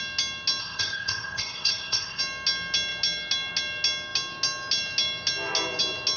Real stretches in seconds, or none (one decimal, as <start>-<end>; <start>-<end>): 0.0-0.6; 2.2-6.2